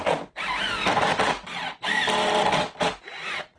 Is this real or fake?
real